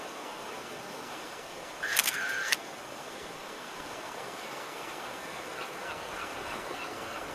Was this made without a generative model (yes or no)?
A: no